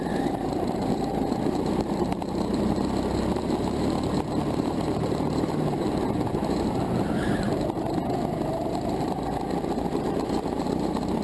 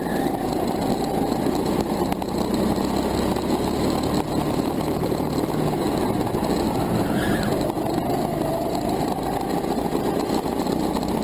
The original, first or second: second